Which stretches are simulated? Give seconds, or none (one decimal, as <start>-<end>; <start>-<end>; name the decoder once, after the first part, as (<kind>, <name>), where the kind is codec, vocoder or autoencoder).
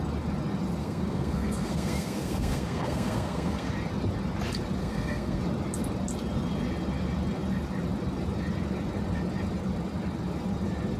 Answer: 0.8-3.7 (codec, SNAC); 4.8-5.4